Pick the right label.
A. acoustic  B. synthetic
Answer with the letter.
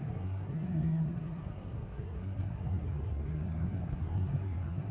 B